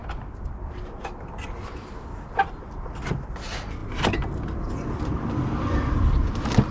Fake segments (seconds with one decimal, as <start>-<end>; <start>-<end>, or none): none